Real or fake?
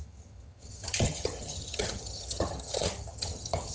fake